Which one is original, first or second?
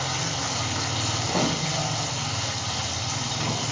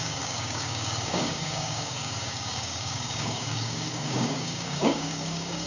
first